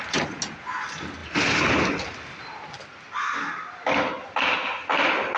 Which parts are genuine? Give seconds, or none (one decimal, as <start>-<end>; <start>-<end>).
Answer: 0.0-5.4